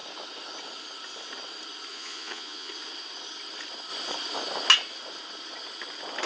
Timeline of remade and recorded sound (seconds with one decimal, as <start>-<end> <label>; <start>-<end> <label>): 0.0-1.9 recorded; 1.9-2.7 remade; 2.7-6.3 recorded